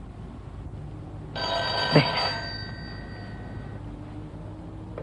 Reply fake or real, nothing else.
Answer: real